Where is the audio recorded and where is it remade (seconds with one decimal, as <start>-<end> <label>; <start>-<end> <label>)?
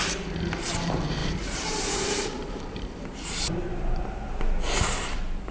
0.0-1.2 recorded; 1.2-4.0 remade; 4.0-5.5 recorded